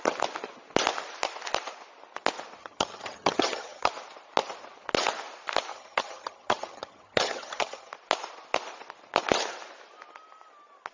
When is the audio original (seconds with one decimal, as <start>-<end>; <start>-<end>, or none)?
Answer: 0.0-2.6; 3.9-5.7; 7.9-10.9